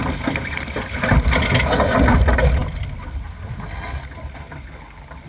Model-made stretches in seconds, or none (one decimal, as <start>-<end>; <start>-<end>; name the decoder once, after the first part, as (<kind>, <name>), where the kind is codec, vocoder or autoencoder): none